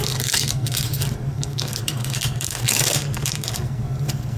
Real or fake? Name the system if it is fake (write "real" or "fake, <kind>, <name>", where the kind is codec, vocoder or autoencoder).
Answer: fake, codec, SNAC